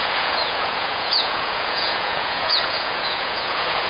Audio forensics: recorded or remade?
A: remade